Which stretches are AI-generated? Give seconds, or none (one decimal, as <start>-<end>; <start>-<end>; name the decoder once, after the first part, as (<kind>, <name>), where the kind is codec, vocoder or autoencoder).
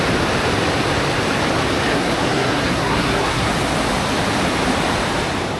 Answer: 1.9-3.5 (codec, SNAC)